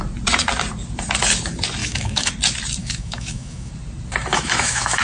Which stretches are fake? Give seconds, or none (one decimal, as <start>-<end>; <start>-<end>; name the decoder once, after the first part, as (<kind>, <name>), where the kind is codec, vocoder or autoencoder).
1.8-2.3 (autoencoder, DAC-VAE); 2.8-3.7; 4.3-5.0